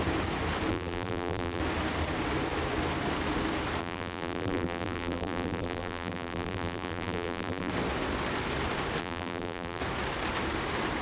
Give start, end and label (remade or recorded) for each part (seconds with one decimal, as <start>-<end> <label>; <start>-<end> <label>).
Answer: 0.0-0.7 recorded; 0.7-1.6 remade; 1.6-3.8 recorded; 3.8-7.7 remade; 7.7-9.0 recorded; 9.0-9.8 remade; 9.8-11.0 recorded